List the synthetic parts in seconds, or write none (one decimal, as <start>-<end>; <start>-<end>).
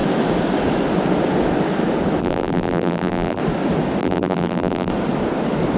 2.2-3.4; 4.0-4.9